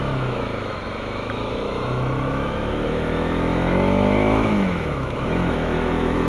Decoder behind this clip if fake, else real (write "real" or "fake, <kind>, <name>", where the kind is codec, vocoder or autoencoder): fake, autoencoder, DAC-VAE